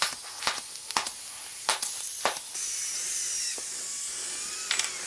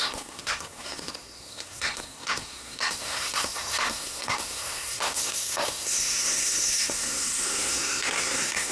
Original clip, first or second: first